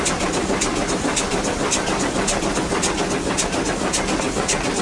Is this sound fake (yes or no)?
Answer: no